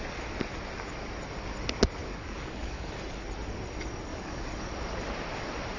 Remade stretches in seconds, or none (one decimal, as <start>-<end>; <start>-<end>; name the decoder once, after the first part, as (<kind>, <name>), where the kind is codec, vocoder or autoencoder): 2.0-2.9 (codec, DAC); 4.1-4.7